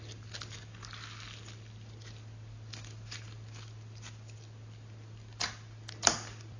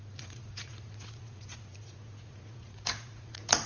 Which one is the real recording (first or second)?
first